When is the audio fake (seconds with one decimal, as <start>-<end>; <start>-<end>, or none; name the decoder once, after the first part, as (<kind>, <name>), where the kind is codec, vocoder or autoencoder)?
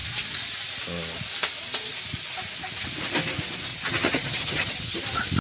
3.7-5.0 (vocoder, HiFi-GAN)